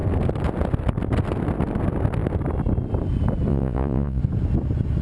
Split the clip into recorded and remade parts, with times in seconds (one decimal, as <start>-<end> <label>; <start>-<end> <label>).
0.0-3.5 recorded; 3.5-4.2 remade; 4.2-5.0 recorded